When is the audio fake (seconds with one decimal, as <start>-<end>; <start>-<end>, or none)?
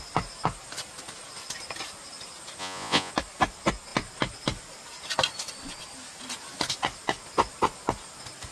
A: 2.6-3.1